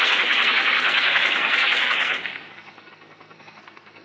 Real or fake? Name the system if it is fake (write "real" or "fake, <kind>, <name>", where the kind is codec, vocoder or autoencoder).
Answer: fake, codec, SNAC